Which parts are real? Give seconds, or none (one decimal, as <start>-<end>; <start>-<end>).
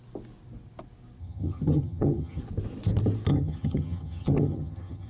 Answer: 0.0-1.2; 2.4-3.3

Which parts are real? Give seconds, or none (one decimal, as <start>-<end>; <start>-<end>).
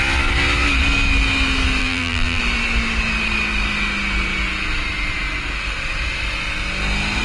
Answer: 0.0-1.8; 2.4-7.2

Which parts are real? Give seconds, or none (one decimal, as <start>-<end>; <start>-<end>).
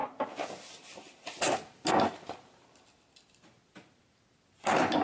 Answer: 0.0-5.0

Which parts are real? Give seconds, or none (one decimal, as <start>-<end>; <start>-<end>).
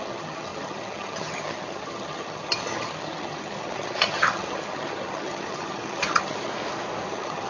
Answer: 6.5-7.1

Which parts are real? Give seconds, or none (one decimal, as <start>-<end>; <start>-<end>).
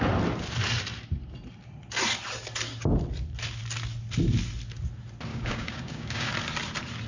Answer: 0.0-5.3; 6.3-7.1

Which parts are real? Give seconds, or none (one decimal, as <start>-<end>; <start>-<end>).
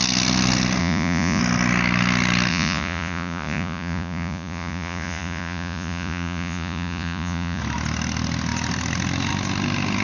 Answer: 0.0-0.8; 1.4-2.5; 7.6-10.0